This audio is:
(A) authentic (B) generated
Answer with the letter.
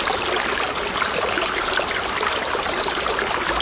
A